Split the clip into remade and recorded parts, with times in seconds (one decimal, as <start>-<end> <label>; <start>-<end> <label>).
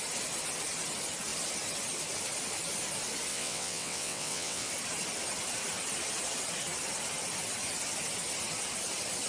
0.0-3.3 recorded; 3.3-4.7 remade; 4.7-9.3 recorded